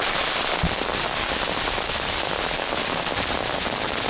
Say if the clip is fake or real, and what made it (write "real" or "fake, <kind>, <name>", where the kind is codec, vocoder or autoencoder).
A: real